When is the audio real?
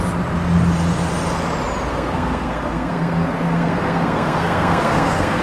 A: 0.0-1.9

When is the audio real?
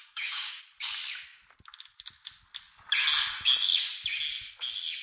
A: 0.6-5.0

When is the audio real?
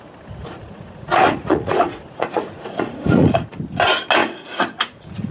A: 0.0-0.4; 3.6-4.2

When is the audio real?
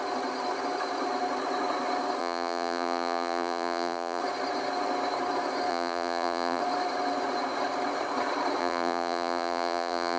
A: 0.0-2.2; 4.2-5.7; 6.6-8.6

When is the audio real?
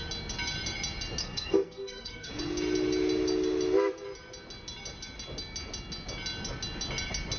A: 0.0-1.2; 2.3-7.4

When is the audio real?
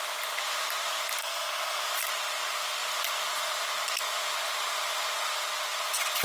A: 0.0-1.2; 1.8-6.2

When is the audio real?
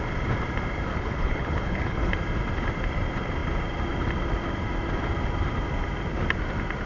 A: 0.0-0.9; 2.1-6.9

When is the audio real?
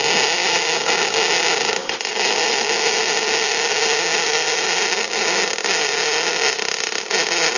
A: 0.0-0.4; 0.9-1.8; 6.4-7.6